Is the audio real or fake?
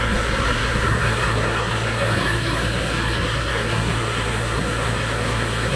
fake